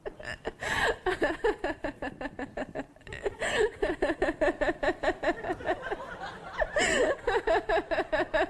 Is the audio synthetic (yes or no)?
no